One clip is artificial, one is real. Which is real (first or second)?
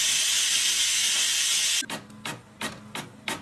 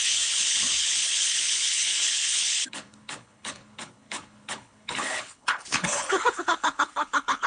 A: first